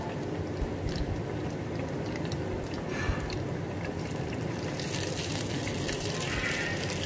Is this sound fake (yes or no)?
no